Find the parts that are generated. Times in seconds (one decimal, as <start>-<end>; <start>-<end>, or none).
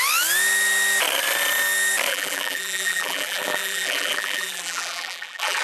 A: 2.1-5.6